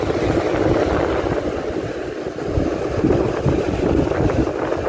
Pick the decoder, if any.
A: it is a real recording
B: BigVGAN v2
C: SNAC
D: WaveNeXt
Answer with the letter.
A